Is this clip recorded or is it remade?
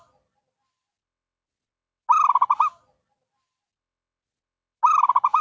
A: recorded